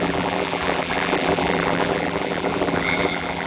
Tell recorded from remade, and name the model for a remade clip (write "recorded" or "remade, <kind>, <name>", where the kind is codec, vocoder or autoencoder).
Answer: remade, vocoder, BigVGAN v2